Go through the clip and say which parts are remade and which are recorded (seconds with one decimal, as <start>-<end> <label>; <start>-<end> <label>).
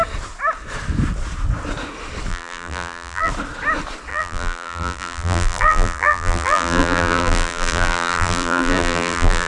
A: 0.0-2.3 recorded; 2.3-3.3 remade; 3.3-4.1 recorded; 4.1-9.5 remade